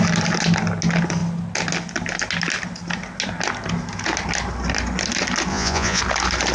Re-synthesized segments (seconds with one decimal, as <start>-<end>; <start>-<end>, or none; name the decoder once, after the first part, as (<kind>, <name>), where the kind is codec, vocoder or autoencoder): 5.5-6.0 (vocoder, Vocos)